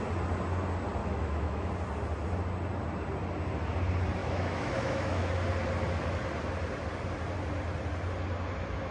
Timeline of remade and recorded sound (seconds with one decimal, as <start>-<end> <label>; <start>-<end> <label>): 0.0-1.0 recorded; 1.0-1.7 remade; 1.7-4.2 recorded; 4.2-5.3 remade; 5.3-8.9 recorded